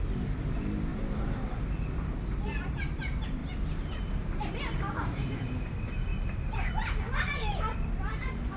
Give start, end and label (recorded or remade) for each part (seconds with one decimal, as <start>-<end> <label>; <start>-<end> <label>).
0.0-2.1 remade; 2.1-2.8 recorded; 2.8-6.1 remade; 6.1-6.7 recorded; 6.7-8.6 remade